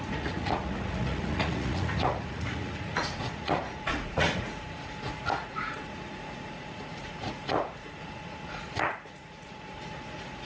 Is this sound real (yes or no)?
no